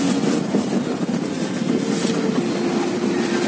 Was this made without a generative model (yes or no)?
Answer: yes